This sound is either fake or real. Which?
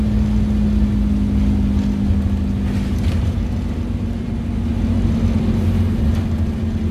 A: real